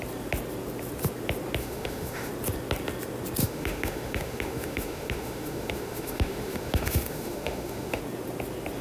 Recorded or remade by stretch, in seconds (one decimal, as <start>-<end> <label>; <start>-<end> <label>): 0.0-1.6 recorded; 1.6-2.3 remade; 2.3-3.4 recorded; 3.4-8.0 remade; 8.0-8.8 recorded